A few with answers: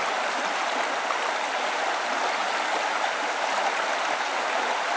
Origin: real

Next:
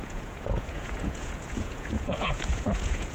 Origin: fake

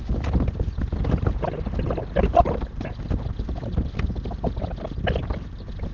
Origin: real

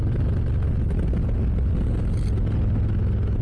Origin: real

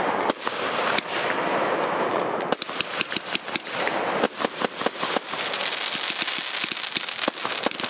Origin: real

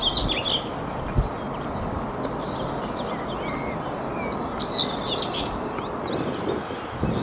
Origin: real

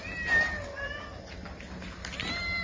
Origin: real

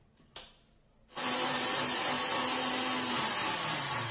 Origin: real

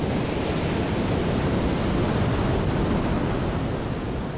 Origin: real